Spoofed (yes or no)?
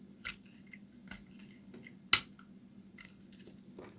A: no